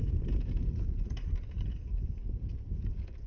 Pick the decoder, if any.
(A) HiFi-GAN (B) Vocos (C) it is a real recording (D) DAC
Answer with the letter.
C